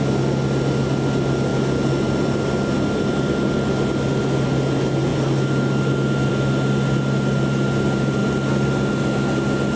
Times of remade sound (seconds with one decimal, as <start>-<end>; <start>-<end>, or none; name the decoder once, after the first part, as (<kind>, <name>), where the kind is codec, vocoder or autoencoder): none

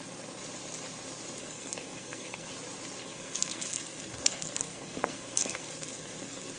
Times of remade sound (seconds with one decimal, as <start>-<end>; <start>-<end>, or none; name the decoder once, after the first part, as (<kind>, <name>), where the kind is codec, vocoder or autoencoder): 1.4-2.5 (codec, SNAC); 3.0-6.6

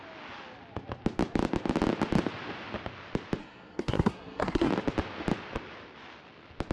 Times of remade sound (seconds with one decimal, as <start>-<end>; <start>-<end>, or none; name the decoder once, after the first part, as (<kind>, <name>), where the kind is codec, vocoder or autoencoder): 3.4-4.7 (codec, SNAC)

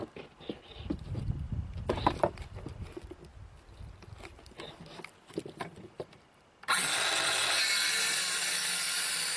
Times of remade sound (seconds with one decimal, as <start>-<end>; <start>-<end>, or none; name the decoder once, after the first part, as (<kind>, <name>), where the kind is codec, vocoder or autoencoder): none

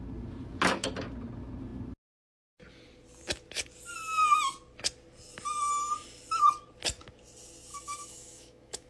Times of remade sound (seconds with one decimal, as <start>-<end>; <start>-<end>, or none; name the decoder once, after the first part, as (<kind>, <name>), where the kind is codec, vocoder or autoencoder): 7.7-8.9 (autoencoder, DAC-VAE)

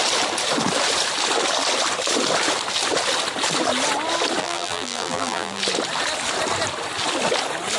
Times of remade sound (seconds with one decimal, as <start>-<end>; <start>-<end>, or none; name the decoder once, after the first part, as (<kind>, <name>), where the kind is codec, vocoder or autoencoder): 4.4-5.6 (vocoder, BigVGAN v2)